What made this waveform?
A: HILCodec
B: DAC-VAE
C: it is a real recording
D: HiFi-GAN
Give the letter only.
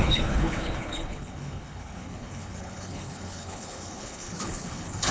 A